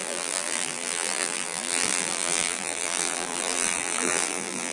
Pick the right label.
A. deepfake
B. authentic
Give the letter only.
A